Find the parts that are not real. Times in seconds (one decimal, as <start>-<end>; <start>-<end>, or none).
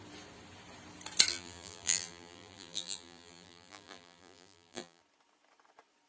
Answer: 1.3-5.0